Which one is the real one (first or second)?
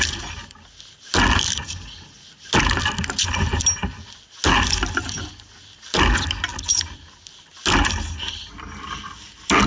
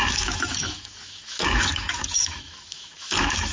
first